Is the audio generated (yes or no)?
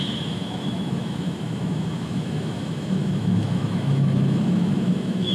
yes